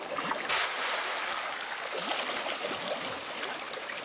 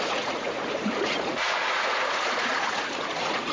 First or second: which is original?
first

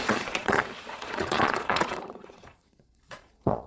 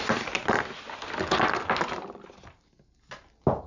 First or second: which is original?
second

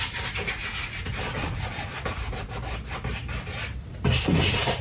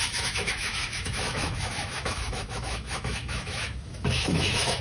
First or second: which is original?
first